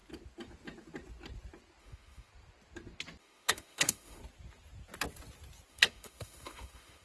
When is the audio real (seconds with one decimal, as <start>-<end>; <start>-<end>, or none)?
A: 0.0-1.8; 2.3-3.2; 4.2-5.7